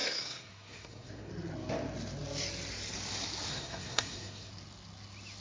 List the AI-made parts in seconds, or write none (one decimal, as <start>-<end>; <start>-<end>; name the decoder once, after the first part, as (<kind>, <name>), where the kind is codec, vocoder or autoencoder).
0.0-1.3 (codec, SNAC); 3.5-4.5